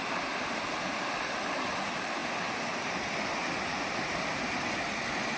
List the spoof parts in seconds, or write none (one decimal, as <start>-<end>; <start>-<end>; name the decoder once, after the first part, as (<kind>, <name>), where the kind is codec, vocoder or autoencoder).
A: none